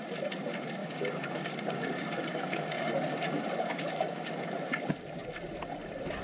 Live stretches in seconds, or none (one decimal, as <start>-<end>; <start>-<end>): 0.0-0.8; 4.5-6.2